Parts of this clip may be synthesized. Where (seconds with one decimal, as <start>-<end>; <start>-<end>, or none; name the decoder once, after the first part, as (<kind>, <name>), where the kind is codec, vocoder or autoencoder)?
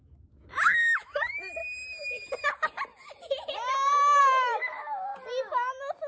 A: 0.0-1.6 (autoencoder, DAC-VAE); 4.2-5.1